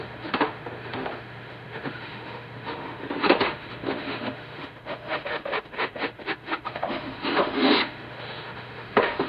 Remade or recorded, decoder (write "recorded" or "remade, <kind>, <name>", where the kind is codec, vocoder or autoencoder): remade, autoencoder, DAC-VAE